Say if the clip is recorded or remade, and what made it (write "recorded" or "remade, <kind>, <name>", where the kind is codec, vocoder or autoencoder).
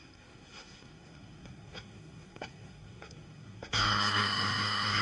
remade, codec, SNAC